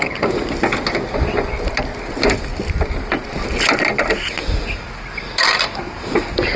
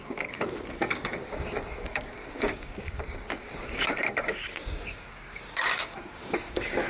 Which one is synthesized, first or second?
second